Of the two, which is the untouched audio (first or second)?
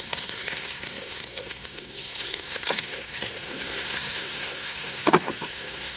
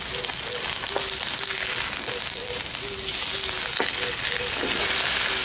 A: second